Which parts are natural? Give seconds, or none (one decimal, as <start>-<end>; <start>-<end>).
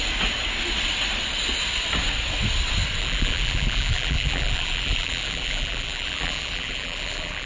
0.0-3.0